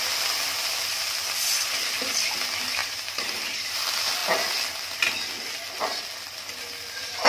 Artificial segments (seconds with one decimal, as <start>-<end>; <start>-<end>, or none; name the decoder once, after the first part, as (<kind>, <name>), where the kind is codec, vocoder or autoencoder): 2.8-3.8 (vocoder, BigVGAN v2)